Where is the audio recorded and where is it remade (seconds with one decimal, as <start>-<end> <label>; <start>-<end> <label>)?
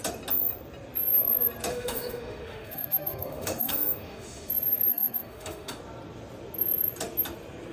0.0-1.7 recorded; 1.7-4.5 remade; 4.5-4.9 recorded; 4.9-5.8 remade; 5.8-7.7 recorded